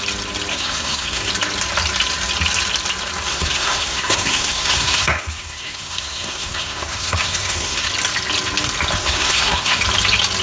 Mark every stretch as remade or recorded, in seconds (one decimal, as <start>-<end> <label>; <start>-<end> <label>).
0.0-0.5 recorded; 0.5-1.3 remade; 1.3-3.3 recorded; 3.3-7.9 remade; 7.9-9.0 recorded; 9.0-9.8 remade; 9.8-10.4 recorded